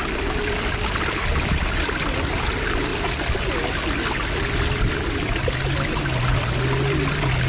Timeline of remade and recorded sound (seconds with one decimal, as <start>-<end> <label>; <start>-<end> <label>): 0.0-7.5 recorded